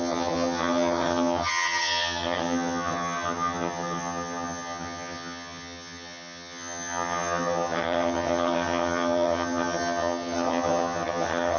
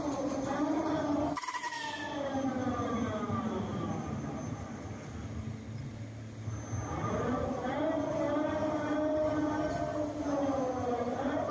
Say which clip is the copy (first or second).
first